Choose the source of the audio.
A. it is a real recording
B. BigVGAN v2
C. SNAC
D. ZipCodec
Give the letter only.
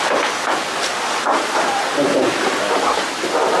A